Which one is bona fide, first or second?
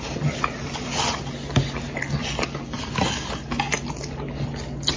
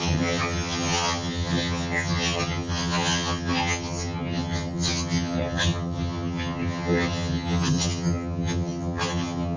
first